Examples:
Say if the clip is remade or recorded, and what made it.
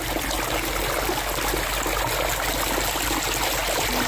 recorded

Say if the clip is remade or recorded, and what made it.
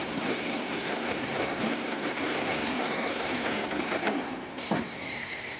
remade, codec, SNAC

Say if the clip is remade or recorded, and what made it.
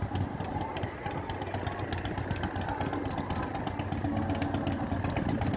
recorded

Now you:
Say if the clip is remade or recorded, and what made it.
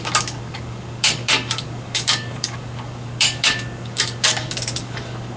remade, codec, DAC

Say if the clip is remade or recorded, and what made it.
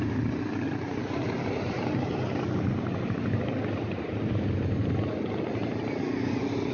recorded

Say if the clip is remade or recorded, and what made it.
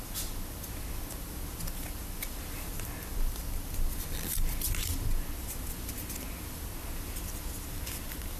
recorded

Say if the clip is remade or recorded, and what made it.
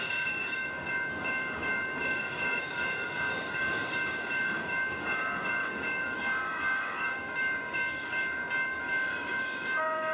remade, codec, DAC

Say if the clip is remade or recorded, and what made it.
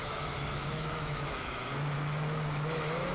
remade, autoencoder, DAC-VAE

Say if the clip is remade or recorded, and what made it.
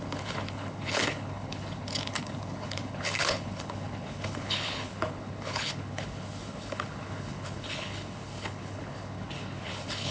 remade, codec, HILCodec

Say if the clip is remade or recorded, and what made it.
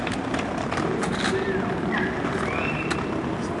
recorded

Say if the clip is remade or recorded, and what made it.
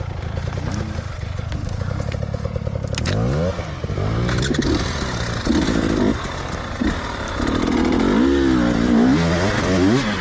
recorded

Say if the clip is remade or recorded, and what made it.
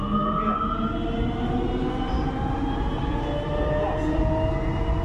recorded